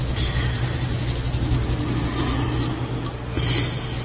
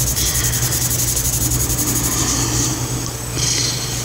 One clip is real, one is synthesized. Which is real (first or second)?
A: first